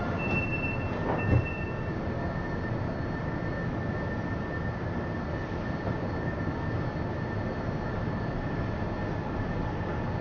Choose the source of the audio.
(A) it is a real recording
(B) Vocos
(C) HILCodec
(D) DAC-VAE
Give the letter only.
A